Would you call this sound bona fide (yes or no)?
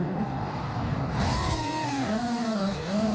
no